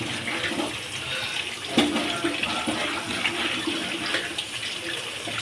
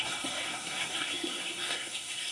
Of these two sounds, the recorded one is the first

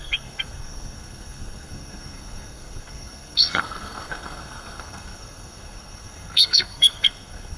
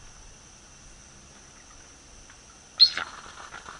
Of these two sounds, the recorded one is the second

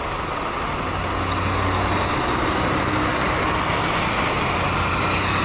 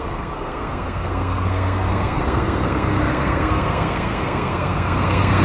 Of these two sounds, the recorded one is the first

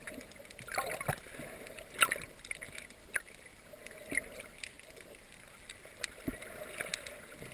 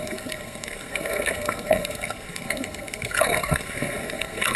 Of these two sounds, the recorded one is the first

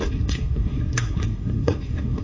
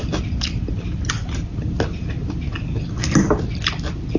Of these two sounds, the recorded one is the second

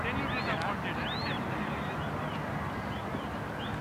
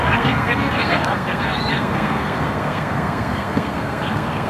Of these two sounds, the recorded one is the first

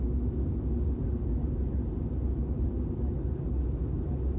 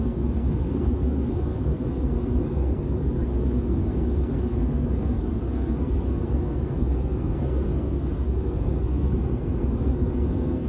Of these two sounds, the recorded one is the first